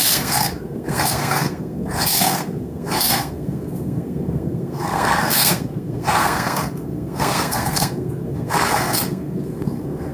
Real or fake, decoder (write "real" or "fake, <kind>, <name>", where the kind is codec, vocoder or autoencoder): fake, codec, SNAC